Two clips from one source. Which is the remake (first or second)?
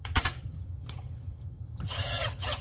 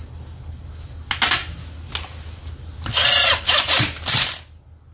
first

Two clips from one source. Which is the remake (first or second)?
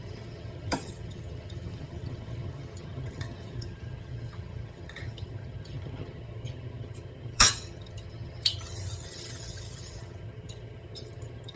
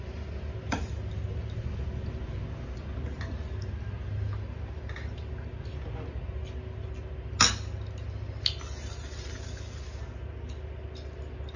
first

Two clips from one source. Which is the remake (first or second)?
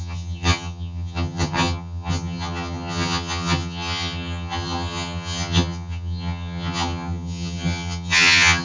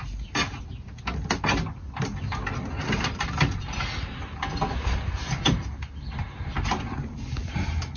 first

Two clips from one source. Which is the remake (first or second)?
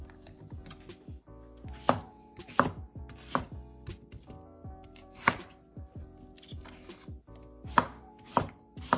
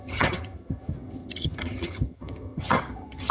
second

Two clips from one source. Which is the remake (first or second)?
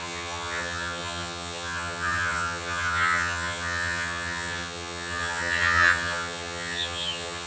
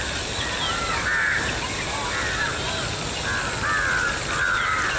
first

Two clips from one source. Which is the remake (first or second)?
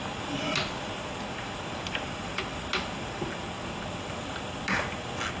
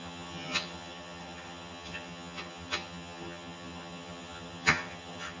second